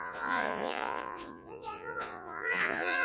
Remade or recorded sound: remade